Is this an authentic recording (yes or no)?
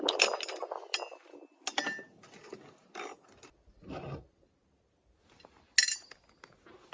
yes